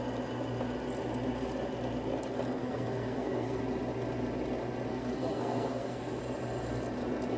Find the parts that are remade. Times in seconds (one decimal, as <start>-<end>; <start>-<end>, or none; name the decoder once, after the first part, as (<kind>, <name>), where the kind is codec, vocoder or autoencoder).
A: 2.6-3.6 (codec, SNAC); 4.9-6.2